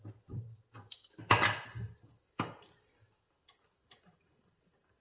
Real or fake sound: fake